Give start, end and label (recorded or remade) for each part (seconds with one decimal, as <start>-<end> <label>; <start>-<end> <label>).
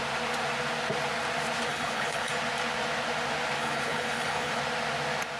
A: 0.0-1.7 recorded; 1.7-2.3 remade; 2.3-3.6 recorded; 3.6-4.6 remade; 4.6-5.4 recorded